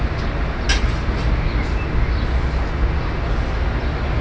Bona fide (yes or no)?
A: yes